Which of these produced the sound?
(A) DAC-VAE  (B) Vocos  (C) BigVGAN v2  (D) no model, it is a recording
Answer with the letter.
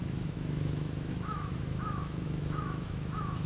A